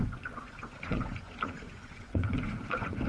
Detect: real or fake fake